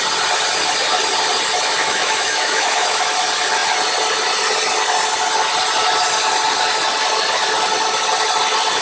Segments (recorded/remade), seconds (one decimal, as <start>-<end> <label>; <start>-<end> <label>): 0.0-1.8 recorded; 1.8-3.0 remade; 3.0-8.8 recorded